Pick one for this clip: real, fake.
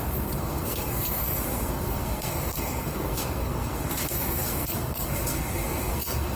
fake